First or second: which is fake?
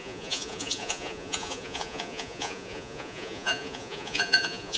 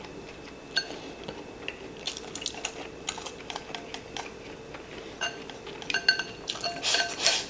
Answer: first